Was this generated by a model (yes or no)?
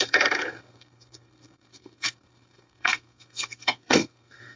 yes